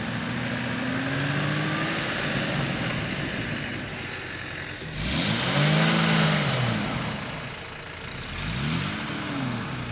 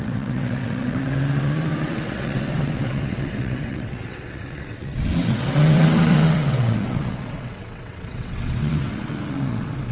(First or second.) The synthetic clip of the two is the second